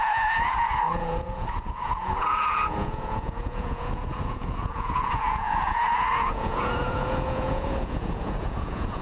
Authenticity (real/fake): fake